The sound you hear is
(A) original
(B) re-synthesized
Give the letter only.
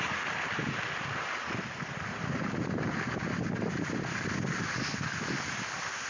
B